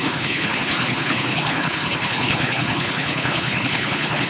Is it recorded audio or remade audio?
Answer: remade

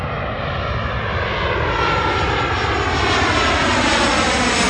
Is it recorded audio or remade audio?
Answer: recorded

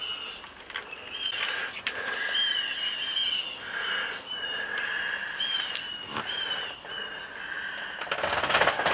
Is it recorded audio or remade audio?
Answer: recorded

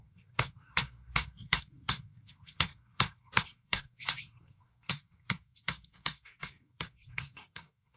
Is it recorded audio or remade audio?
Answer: remade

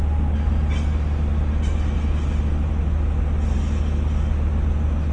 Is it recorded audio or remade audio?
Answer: recorded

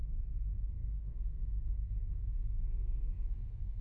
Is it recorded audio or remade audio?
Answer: remade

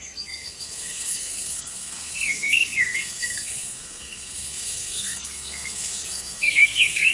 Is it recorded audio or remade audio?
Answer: remade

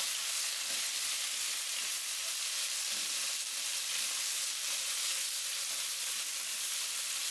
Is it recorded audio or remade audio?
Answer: recorded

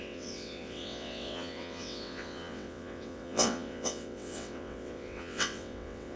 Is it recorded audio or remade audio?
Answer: remade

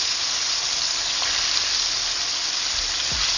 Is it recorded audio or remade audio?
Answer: recorded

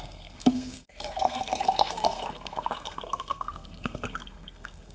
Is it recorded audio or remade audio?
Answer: remade